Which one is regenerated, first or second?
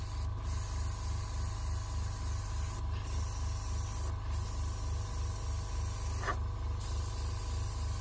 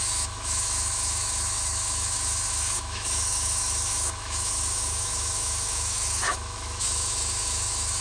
second